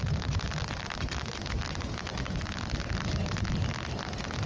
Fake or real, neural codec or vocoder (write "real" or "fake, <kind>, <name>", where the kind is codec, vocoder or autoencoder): real